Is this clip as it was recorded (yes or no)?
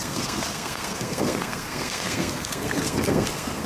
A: no